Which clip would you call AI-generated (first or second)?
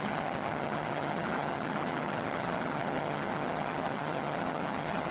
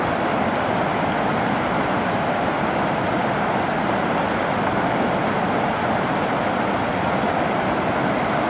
first